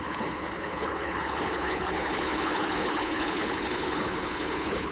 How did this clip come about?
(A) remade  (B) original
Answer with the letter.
A